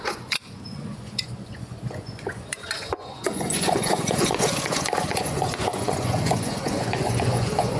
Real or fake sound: fake